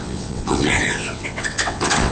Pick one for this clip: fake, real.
fake